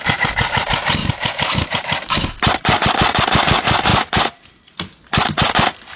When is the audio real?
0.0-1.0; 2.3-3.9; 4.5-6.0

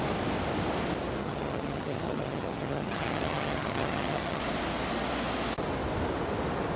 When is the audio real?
0.0-1.2; 4.4-6.8

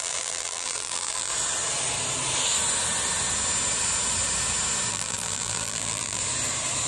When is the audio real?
1.3-4.9; 6.2-6.9

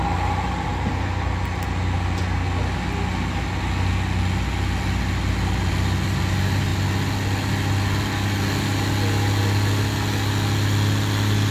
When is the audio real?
0.0-11.5

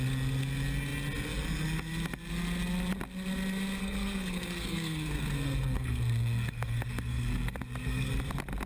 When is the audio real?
0.0-3.8; 8.1-8.7